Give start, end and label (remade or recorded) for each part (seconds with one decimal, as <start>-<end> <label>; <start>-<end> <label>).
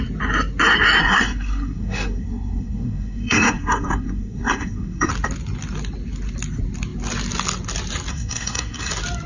0.0-1.0 recorded; 1.0-5.1 remade; 5.1-8.1 recorded; 8.1-8.9 remade; 8.9-9.3 recorded